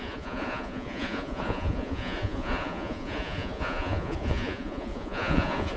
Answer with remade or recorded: remade